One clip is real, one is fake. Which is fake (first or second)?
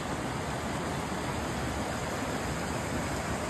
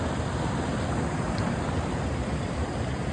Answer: second